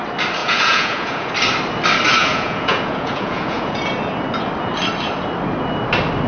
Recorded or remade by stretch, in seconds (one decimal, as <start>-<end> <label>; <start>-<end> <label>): 0.0-0.4 recorded; 0.4-1.3 remade; 1.3-2.2 recorded; 2.2-3.8 remade; 3.8-6.3 recorded